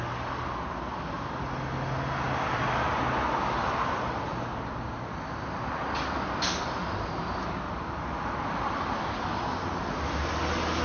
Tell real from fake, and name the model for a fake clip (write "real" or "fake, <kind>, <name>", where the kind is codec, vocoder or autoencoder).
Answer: real